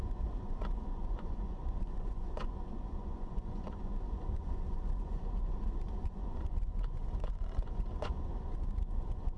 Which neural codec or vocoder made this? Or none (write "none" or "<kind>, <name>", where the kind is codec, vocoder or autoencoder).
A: vocoder, Vocos